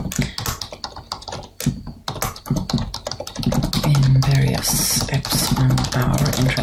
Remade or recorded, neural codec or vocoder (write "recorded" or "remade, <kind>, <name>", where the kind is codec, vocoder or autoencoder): recorded